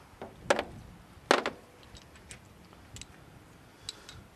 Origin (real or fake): real